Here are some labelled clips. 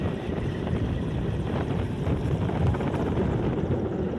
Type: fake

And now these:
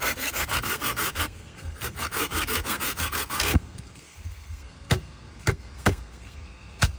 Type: fake